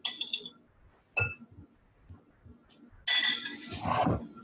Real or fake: real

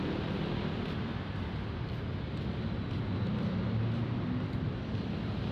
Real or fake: real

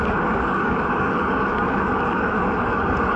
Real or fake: fake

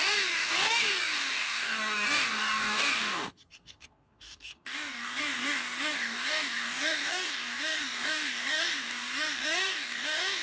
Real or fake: fake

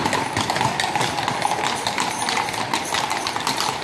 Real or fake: real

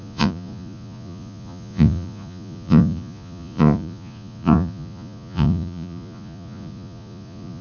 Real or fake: fake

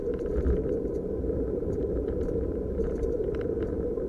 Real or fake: fake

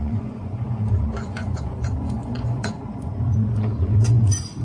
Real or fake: fake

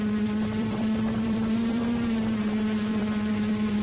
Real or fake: fake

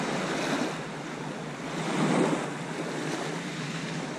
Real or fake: real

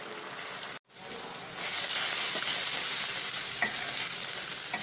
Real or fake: real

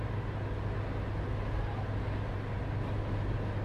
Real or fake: real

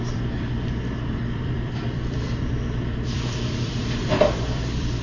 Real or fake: fake